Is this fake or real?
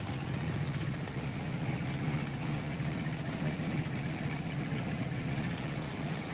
fake